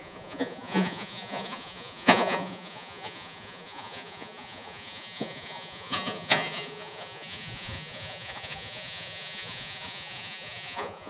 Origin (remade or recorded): remade